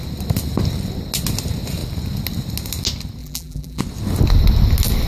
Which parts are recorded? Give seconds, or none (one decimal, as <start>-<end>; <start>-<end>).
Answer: 0.0-3.2; 3.8-5.1